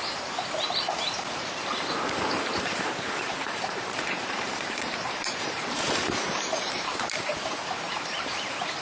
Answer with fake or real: fake